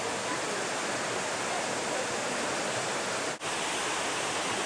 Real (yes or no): yes